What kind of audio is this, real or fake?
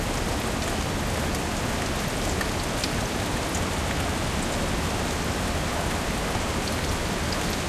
real